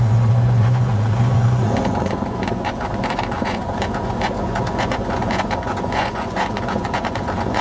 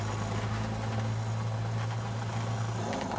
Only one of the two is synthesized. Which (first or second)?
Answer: first